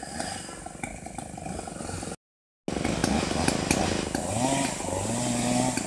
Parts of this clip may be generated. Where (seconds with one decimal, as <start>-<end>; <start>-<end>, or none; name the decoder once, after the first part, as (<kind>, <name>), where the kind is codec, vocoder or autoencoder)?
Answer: none